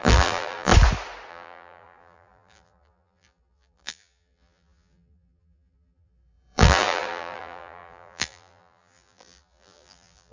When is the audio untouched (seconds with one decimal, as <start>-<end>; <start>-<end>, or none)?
0.7-1.3

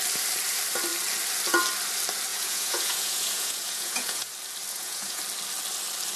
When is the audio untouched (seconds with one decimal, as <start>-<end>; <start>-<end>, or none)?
0.0-2.3; 4.3-4.7; 5.2-6.2

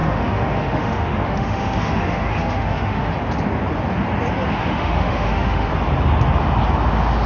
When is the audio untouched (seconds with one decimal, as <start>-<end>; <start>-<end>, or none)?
3.1-4.6; 5.7-7.3

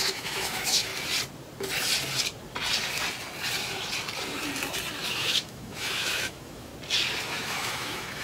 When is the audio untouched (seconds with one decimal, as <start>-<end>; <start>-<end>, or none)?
0.9-5.1; 6.7-7.2

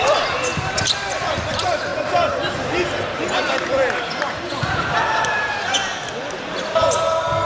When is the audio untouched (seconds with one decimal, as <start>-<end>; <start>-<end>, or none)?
1.9-3.5

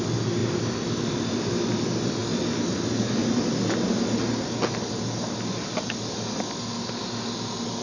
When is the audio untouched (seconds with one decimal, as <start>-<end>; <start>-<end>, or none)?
0.0-7.8